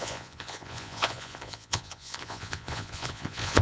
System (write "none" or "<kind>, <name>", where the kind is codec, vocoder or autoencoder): vocoder, Vocos